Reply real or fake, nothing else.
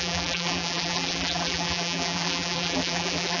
fake